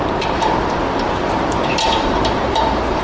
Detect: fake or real fake